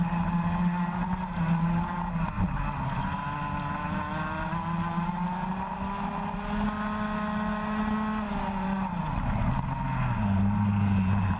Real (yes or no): yes